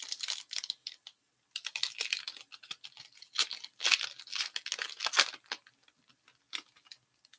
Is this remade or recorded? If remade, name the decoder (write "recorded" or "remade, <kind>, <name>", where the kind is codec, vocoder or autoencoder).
recorded